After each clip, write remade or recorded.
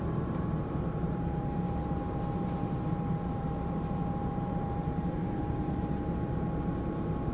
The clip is remade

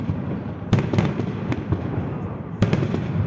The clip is remade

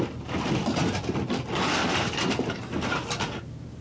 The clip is recorded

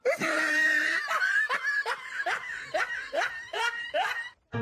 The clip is remade